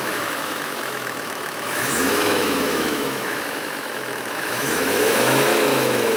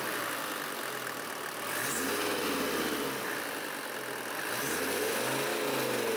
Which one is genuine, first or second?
second